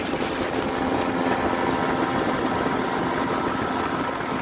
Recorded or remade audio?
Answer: recorded